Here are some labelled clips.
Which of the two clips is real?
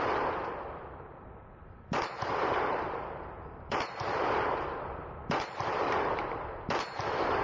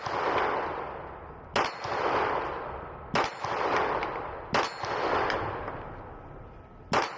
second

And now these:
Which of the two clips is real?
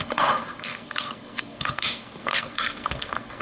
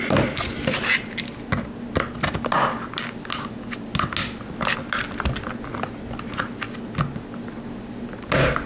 second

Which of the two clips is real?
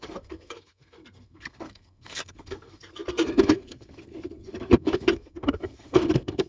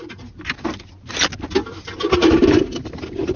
second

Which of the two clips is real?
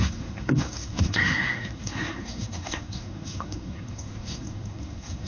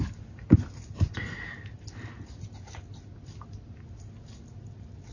second